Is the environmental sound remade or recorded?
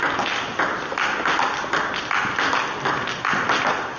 recorded